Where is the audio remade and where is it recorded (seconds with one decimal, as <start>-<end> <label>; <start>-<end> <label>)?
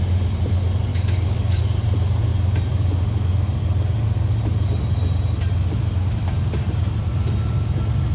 0.0-0.9 recorded; 0.9-1.6 remade; 1.6-8.1 recorded